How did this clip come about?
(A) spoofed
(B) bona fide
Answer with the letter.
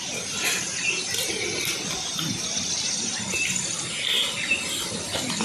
B